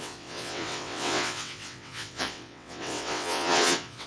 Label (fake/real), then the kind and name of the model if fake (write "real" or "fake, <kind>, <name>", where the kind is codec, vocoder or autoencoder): fake, vocoder, WaveNeXt